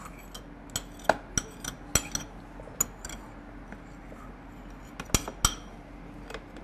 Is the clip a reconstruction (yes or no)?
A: no